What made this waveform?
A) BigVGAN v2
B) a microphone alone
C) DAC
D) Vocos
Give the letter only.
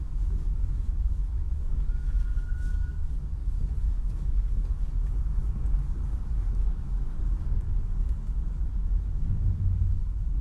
C